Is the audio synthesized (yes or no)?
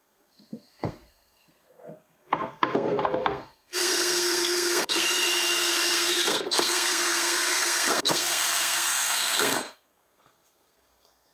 yes